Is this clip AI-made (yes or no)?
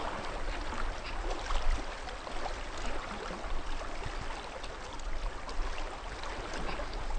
no